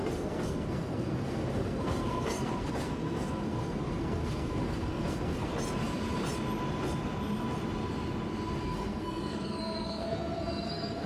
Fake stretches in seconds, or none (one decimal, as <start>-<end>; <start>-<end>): 0.0-5.5; 8.6-11.1